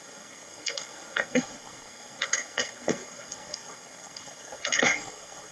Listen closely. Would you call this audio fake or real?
fake